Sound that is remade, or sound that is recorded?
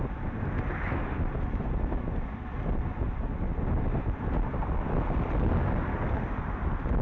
recorded